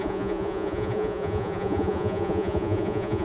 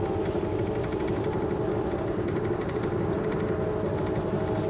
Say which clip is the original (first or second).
second